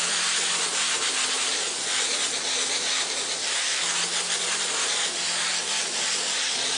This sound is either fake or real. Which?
real